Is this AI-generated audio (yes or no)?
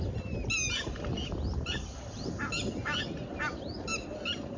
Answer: no